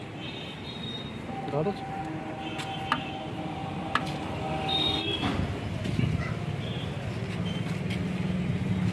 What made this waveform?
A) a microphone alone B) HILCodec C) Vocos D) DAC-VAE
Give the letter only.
A